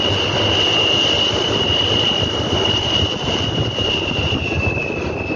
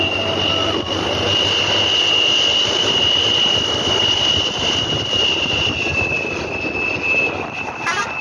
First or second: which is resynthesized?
first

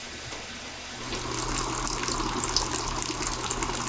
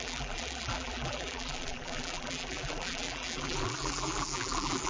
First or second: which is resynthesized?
second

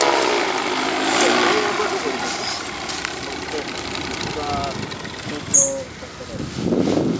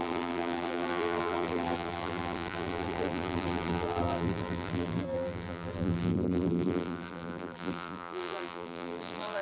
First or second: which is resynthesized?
second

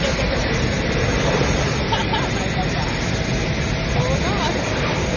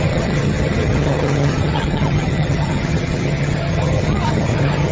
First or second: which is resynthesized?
second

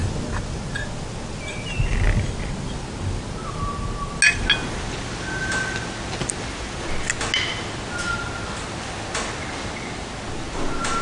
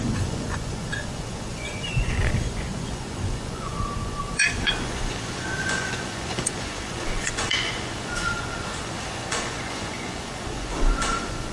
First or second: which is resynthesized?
second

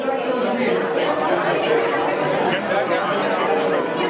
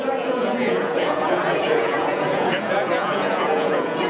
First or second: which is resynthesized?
second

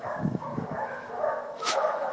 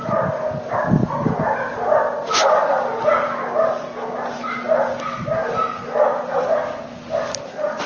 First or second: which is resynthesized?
first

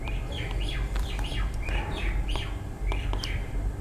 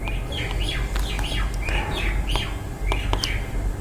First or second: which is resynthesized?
first